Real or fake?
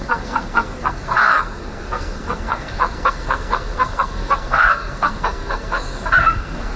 fake